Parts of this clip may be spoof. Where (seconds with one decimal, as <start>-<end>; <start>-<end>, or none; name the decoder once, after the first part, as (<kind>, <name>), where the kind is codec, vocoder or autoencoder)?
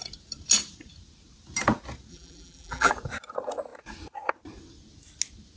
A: 2.1-2.9 (vocoder, BigVGAN v2)